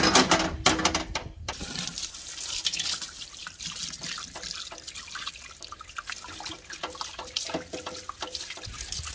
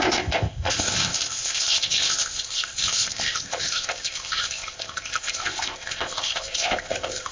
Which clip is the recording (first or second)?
first